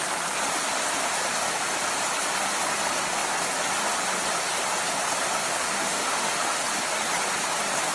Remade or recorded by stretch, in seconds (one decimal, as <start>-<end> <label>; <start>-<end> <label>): 0.0-5.4 recorded; 5.4-6.6 remade; 6.6-7.9 recorded